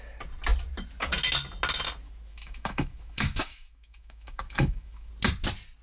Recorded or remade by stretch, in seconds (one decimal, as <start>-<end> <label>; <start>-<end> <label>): 0.0-2.3 recorded; 2.3-5.1 remade; 5.1-5.8 recorded